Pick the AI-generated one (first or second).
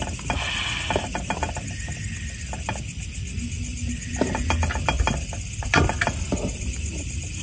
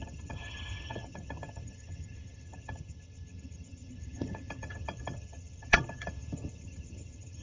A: second